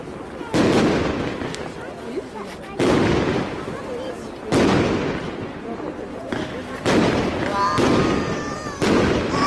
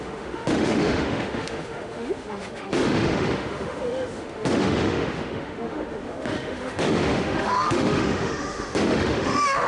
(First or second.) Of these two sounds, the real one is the first